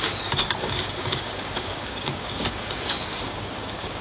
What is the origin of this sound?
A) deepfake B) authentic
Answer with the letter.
A